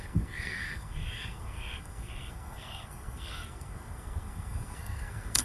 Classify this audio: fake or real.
fake